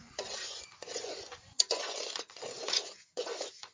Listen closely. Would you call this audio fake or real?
fake